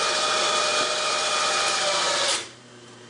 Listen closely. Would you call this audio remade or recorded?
remade